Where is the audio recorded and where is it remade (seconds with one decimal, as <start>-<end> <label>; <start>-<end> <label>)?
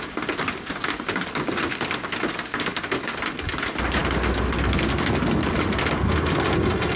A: 0.0-7.0 recorded